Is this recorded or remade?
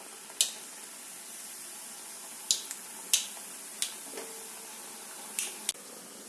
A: recorded